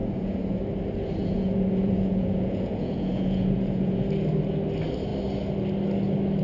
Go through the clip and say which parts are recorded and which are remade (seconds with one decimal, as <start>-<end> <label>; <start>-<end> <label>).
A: 0.0-0.6 remade; 0.6-1.2 recorded; 1.2-4.0 remade; 4.0-6.4 recorded